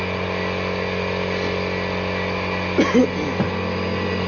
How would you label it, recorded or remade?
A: recorded